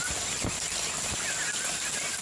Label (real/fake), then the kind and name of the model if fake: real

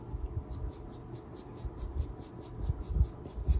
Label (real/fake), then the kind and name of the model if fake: real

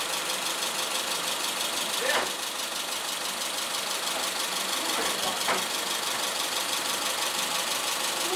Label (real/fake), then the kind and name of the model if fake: real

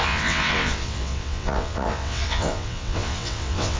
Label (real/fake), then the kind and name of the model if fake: fake, vocoder, WaveNeXt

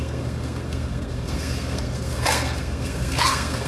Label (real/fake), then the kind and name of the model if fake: fake, codec, SNAC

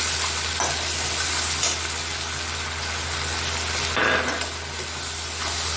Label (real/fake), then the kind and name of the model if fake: real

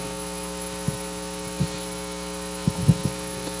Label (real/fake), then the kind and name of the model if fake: fake, autoencoder, DAC-VAE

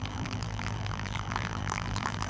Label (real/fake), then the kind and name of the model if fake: fake, vocoder, BigVGAN v2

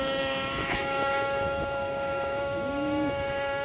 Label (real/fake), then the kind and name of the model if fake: fake, autoencoder, DAC-VAE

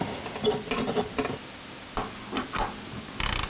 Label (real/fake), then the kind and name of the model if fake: real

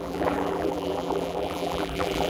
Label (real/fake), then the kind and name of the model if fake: fake, vocoder, BigVGAN v2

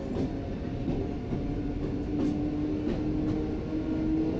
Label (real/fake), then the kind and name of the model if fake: real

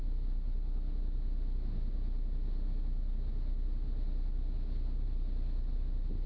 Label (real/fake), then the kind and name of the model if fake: real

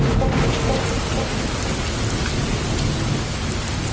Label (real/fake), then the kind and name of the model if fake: real